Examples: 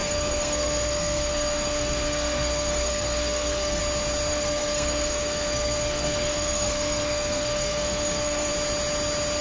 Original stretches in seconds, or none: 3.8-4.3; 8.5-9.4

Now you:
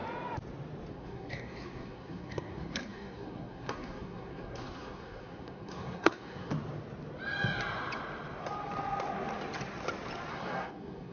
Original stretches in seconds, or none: 0.0-0.9; 6.5-10.3

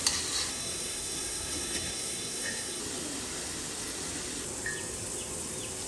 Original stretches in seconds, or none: 0.0-0.5; 2.8-5.9

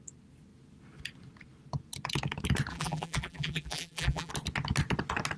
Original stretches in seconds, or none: 0.0-2.7; 4.3-5.4